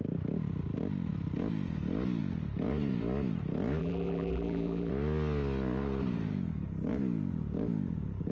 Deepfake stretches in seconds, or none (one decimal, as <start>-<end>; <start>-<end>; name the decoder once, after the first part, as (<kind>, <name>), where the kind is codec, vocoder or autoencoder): 3.8-4.9 (vocoder, BigVGAN v2)